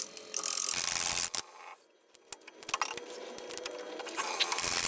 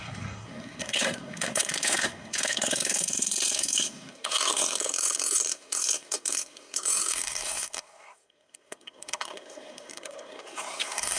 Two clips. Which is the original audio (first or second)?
first